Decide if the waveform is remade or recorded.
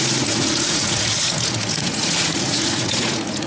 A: remade